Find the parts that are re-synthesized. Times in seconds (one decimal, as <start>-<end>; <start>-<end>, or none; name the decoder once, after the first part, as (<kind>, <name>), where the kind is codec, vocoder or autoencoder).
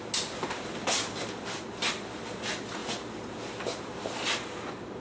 none